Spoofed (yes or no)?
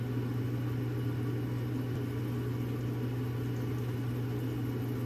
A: no